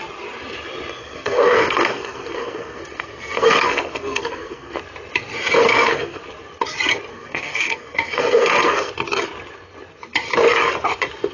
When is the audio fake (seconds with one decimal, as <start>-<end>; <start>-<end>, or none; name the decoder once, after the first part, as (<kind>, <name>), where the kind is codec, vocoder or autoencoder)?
1.0-4.8 (codec, SNAC); 5.6-6.2; 7.1-8.9